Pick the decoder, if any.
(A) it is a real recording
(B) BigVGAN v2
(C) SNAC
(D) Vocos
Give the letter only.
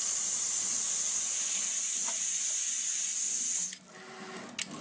A